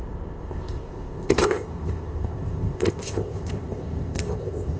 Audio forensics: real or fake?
fake